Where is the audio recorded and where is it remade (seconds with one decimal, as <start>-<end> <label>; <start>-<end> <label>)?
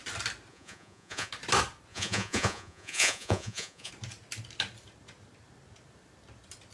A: 0.0-0.5 recorded; 0.5-1.3 remade; 1.3-1.9 recorded; 1.9-3.9 remade; 3.9-6.7 recorded